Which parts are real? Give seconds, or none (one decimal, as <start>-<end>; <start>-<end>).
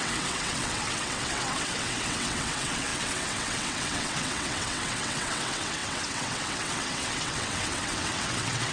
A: none